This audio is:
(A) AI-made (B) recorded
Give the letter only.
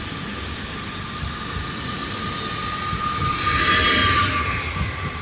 B